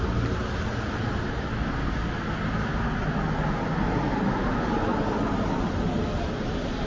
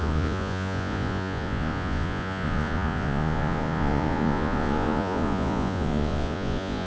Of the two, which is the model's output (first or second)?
second